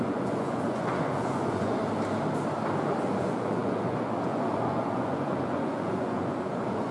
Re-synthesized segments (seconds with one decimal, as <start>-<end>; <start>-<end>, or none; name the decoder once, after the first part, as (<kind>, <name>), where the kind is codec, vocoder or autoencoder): 0.0-1.8 (vocoder, Vocos); 3.0-6.9